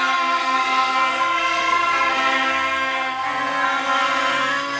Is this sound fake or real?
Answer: fake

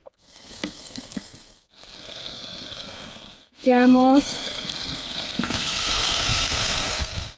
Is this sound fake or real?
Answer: fake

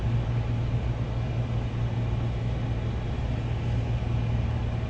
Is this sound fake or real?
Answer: real